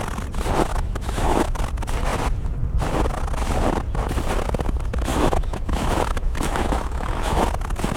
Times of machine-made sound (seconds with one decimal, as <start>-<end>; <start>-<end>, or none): 0.7-1.6; 5.1-7.4